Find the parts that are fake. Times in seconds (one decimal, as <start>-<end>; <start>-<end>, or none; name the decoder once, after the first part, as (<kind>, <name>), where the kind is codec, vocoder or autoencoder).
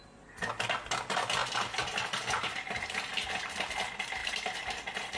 none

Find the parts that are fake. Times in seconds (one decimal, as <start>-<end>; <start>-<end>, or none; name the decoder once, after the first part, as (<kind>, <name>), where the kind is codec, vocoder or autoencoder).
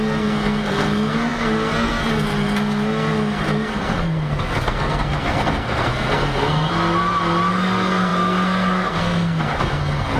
0.0-6.7 (codec, SNAC); 7.5-10.2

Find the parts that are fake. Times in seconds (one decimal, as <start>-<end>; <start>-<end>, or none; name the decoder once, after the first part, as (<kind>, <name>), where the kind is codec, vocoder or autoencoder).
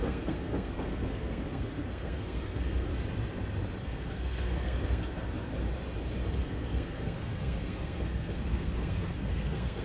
0.0-2.9 (codec, SNAC); 3.8-5.5; 6.4-9.8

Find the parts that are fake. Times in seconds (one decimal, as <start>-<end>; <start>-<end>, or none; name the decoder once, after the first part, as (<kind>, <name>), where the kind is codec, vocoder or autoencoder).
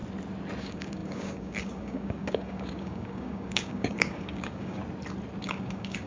0.6-4.8 (codec, DAC); 5.4-6.1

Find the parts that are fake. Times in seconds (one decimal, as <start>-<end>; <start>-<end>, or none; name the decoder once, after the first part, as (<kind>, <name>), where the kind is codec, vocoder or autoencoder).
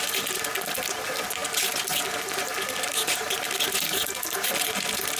none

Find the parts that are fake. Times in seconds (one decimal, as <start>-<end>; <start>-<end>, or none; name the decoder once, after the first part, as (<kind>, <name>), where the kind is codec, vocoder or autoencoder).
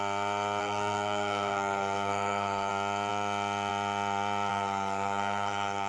0.6-2.7 (codec, SNAC); 4.5-5.9